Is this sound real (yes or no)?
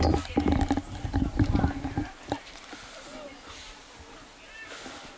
yes